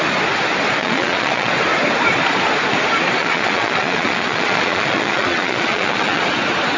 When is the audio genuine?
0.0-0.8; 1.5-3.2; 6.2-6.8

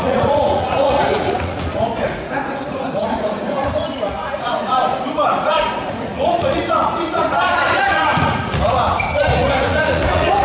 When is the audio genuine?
none